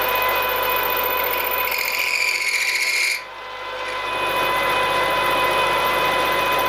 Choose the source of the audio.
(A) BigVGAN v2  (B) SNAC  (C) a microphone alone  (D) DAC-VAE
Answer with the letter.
C